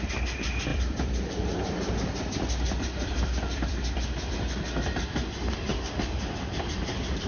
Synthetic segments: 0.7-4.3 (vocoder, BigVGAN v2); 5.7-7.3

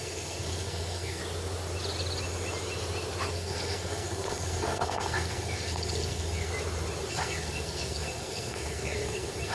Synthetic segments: 0.0-1.2 (codec, SNAC); 3.3-6.5; 7.1-9.5

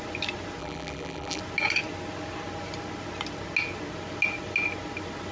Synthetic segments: 0.6-1.4 (vocoder, BigVGAN v2)

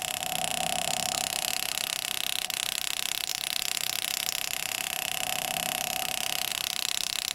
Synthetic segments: none

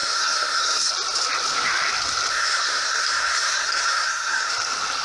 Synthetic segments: 0.0-0.9 (codec, SNAC); 2.3-4.5